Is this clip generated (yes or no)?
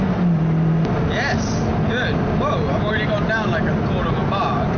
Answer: no